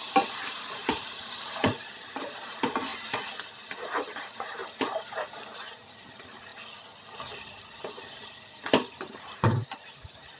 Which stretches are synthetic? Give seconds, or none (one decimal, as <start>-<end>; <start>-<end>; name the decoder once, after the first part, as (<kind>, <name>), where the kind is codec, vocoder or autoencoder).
0.0-2.9 (vocoder, BigVGAN v2); 3.9-4.6; 6.1-6.5; 8.9-10.4